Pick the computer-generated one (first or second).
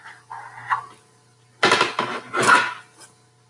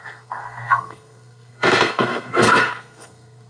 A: second